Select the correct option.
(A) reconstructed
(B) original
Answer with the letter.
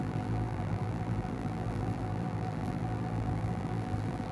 A